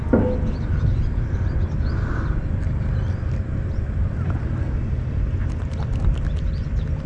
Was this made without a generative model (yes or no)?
yes